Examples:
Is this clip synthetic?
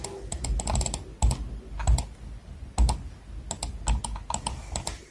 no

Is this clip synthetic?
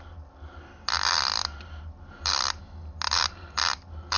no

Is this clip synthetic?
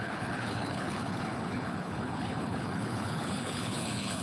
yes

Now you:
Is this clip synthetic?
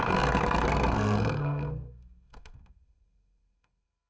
yes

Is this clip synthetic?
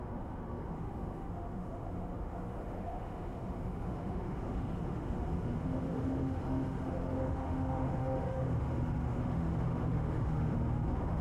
yes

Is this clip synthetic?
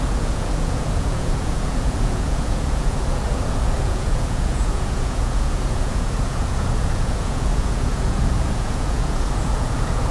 yes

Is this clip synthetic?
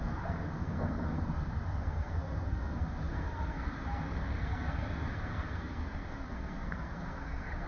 yes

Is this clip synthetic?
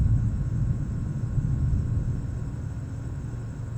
no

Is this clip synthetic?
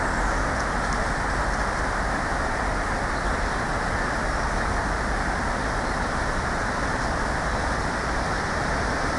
no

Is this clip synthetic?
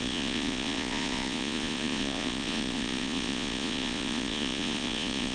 yes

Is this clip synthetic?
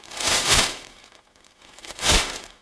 yes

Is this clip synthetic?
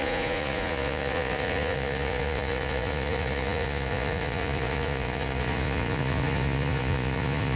yes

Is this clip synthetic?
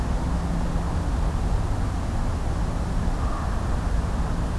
no